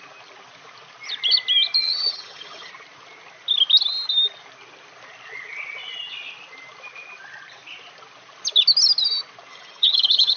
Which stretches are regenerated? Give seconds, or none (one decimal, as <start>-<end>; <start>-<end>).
1.8-2.7; 9.5-10.4

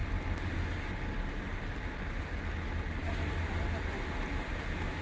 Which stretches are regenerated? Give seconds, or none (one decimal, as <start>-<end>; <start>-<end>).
none

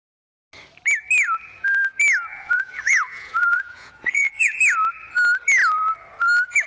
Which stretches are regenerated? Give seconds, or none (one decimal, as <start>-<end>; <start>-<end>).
2.3-4.6

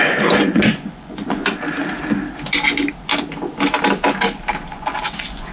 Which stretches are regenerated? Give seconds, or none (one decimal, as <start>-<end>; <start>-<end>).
0.0-1.4; 4.7-5.5

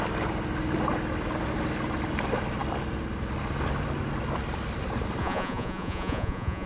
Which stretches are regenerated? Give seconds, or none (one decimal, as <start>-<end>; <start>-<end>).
5.2-6.7

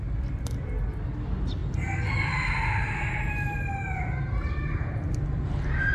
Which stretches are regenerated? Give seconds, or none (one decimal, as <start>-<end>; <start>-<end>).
none